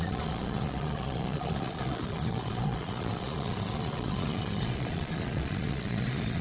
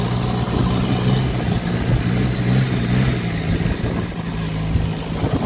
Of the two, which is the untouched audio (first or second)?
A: second